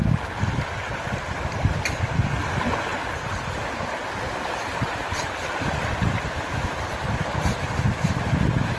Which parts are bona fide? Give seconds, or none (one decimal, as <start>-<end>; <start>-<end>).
0.0-8.8